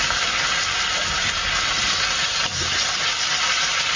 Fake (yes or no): no